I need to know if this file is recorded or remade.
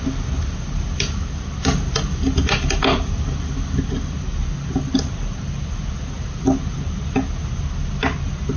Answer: recorded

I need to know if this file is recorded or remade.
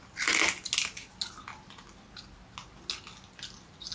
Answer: recorded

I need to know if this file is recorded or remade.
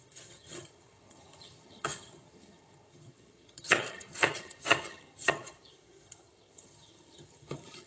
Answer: remade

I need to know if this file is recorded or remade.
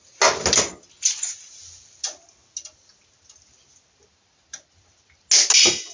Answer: recorded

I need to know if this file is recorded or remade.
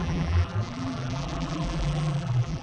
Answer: remade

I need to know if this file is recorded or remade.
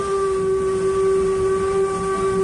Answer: recorded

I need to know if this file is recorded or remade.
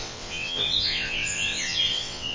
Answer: remade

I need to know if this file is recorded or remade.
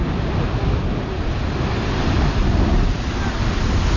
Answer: recorded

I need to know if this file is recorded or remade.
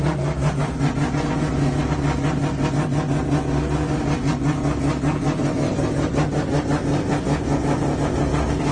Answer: recorded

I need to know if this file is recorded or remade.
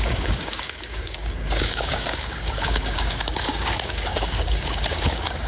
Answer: remade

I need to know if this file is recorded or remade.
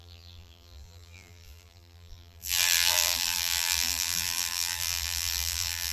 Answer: remade